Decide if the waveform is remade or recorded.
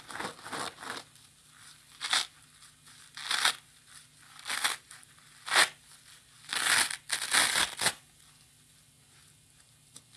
recorded